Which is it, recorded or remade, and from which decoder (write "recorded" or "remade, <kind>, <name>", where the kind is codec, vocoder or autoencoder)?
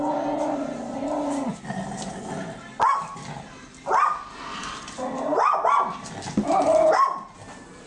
recorded